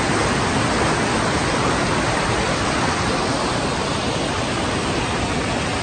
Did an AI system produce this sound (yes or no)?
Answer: no